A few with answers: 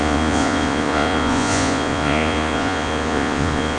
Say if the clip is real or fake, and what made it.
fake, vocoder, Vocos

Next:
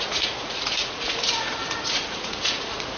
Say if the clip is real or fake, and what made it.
fake, vocoder, Vocos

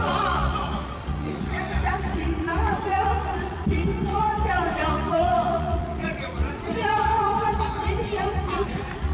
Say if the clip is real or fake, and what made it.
fake, vocoder, Vocos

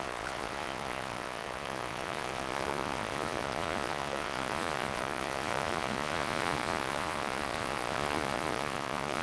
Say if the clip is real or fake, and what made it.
fake, vocoder, Vocos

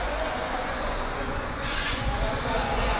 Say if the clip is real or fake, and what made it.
fake, vocoder, Vocos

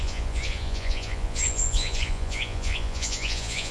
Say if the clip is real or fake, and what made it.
fake, vocoder, Vocos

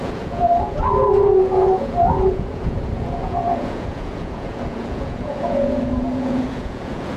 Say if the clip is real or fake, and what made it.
fake, vocoder, Vocos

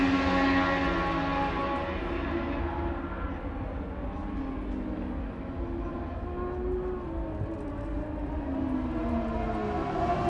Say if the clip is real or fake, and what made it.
real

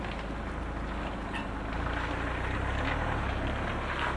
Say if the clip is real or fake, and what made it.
real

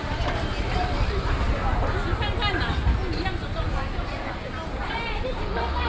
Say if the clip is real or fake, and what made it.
real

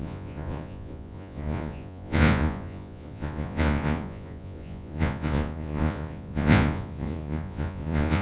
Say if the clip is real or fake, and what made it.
fake, vocoder, Vocos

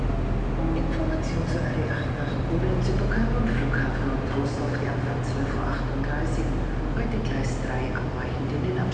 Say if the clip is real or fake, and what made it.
real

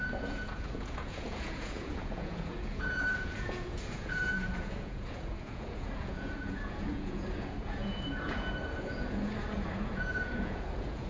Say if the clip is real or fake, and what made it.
fake, vocoder, Vocos